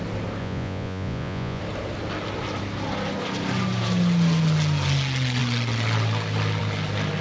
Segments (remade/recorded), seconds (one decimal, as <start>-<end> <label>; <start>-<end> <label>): 0.0-0.4 recorded; 0.4-1.6 remade; 1.6-7.2 recorded